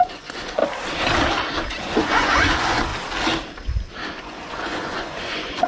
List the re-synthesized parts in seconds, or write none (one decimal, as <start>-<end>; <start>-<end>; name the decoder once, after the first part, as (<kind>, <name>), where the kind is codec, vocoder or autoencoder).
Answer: 0.0-0.6 (vocoder, Vocos); 1.7-2.9; 4.2-5.7